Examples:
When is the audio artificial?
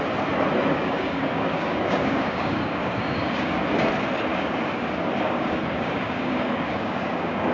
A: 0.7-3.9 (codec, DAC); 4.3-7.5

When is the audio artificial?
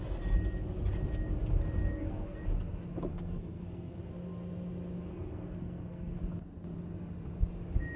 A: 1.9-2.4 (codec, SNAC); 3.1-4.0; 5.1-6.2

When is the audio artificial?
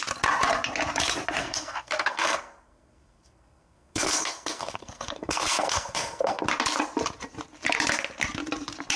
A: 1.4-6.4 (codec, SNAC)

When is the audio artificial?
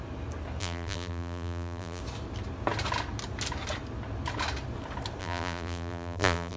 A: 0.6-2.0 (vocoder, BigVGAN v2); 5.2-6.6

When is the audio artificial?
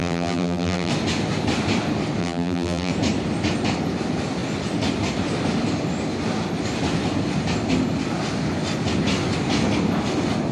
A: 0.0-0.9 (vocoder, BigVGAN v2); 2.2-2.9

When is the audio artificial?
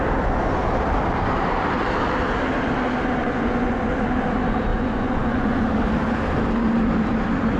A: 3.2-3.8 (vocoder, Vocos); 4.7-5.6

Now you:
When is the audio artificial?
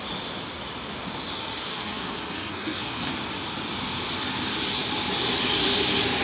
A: 1.7-3.1 (codec, SNAC)